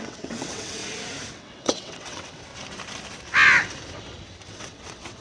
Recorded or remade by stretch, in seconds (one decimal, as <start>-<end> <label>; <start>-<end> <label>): 0.0-0.8 remade; 0.8-1.3 recorded; 1.3-2.5 remade; 2.5-4.5 recorded; 4.5-5.2 remade